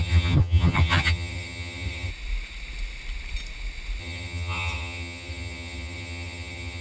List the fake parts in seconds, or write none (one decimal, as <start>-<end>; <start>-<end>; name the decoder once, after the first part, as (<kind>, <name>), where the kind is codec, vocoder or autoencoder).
0.0-2.1 (vocoder, HiFi-GAN); 4.0-6.8